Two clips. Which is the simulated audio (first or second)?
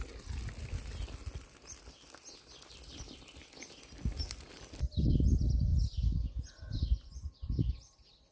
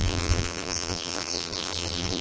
second